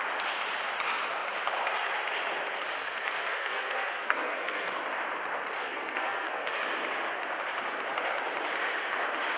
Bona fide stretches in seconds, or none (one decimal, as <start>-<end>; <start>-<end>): 0.0-2.8; 4.8-5.6; 6.6-9.4